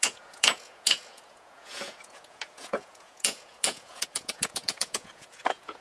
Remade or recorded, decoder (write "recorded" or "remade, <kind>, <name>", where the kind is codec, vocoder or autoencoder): remade, vocoder, Vocos